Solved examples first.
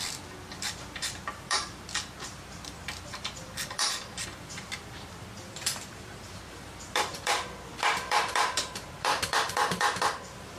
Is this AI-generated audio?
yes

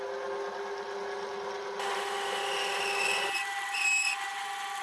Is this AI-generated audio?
no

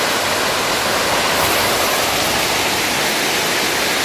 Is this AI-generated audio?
no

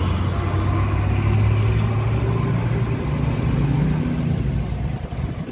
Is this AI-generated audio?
no